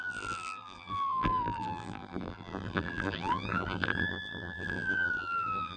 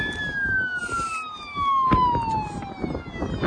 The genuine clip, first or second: second